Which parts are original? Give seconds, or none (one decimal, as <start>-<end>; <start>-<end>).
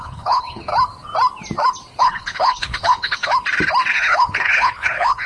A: 0.7-2.0; 3.3-3.9